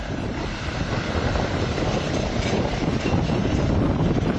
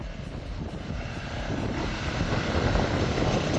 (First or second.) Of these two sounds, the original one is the second